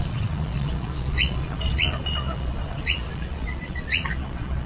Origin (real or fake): fake